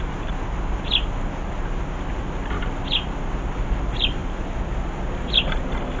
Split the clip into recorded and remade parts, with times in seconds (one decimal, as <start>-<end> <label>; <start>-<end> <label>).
0.0-6.0 recorded